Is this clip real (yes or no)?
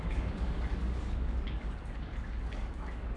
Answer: no